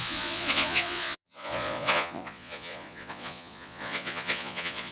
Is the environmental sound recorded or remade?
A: remade